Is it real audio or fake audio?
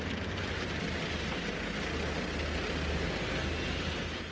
real